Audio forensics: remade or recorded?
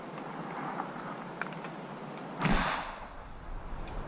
recorded